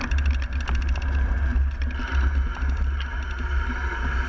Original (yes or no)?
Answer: yes